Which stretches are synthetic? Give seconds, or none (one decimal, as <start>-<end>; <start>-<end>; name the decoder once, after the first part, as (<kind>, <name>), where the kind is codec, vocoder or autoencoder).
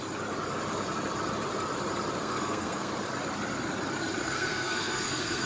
2.2-2.9 (codec, SNAC); 4.2-5.5